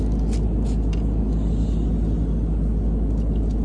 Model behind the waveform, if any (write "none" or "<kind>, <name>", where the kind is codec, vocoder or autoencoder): none